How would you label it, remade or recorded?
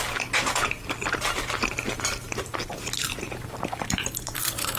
remade